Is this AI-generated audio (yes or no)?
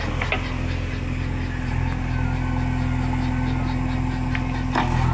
no